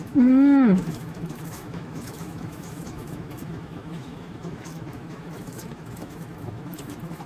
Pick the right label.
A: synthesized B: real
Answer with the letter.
A